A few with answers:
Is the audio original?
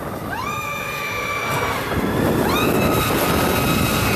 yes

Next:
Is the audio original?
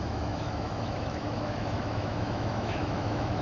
no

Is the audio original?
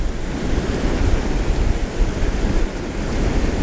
yes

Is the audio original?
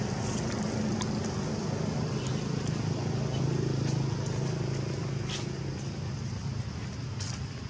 yes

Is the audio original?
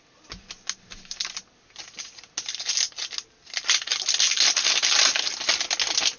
yes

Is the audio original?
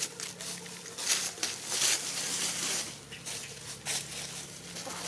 yes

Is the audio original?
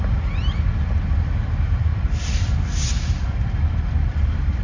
yes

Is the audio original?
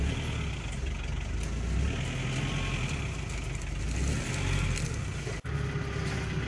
yes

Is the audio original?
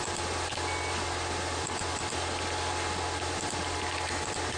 yes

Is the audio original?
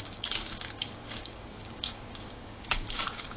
no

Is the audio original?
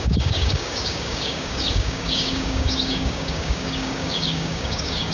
no